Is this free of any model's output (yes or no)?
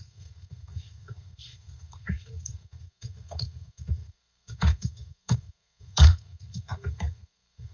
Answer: no